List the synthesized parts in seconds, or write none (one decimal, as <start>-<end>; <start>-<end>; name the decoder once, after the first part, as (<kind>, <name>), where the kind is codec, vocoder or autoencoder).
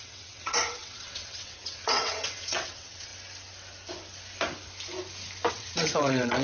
0.0-3.1 (vocoder, WaveNeXt); 5.5-6.4